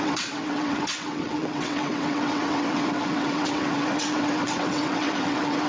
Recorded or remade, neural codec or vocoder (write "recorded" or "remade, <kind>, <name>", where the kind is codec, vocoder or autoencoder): remade, vocoder, WaveNeXt